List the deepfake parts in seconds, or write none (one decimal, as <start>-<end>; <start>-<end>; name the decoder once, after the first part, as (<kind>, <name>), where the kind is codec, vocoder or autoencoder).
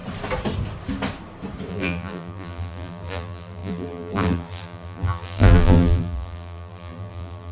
1.7-7.5 (vocoder, BigVGAN v2)